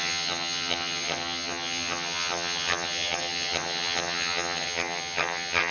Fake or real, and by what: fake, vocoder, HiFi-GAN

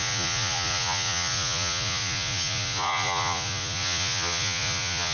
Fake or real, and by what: fake, vocoder, Vocos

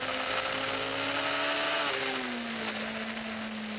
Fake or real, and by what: real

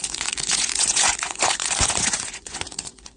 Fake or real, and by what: fake, vocoder, Vocos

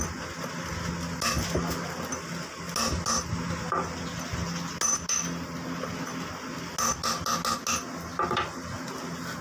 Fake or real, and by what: real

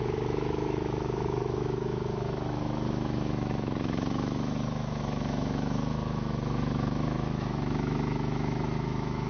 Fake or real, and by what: fake, autoencoder, DAC-VAE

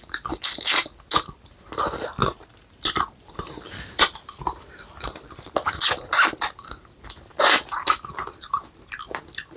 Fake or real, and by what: real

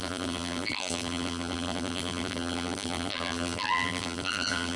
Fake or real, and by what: fake, vocoder, BigVGAN v2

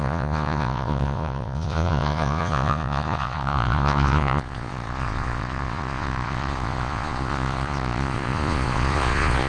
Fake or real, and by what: fake, vocoder, Vocos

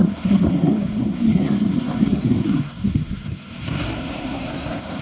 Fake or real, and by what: fake, codec, SNAC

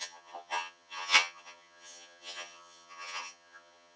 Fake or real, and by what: fake, vocoder, HiFi-GAN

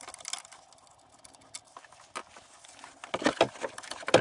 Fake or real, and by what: real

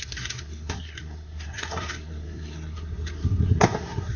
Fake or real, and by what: fake, codec, SNAC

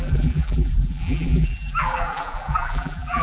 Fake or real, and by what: fake, vocoder, BigVGAN v2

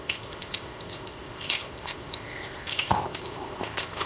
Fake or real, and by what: fake, codec, ZipCodec